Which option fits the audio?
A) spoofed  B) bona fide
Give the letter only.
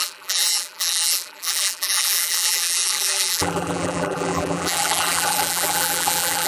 A